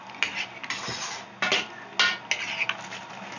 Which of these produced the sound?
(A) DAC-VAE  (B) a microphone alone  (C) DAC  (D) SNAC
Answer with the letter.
B